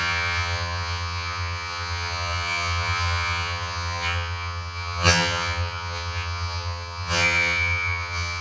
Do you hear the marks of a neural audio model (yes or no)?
yes